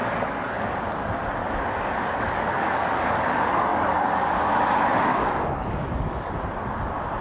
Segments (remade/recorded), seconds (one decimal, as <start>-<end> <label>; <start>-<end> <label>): 0.0-0.7 remade; 0.7-1.4 recorded; 1.4-3.2 remade; 3.2-3.7 recorded; 3.7-4.6 remade; 4.6-5.1 recorded; 5.1-6.3 remade; 6.3-7.2 recorded